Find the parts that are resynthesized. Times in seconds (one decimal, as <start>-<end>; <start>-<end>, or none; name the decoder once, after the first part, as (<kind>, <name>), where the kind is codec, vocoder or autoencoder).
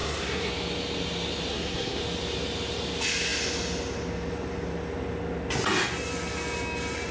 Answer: 0.0-0.5 (codec, SNAC); 1.5-2.0